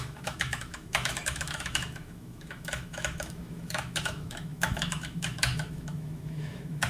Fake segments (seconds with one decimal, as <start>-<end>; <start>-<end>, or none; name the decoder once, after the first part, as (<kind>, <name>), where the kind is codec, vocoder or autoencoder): 0.0-6.9 (autoencoder, DAC-VAE)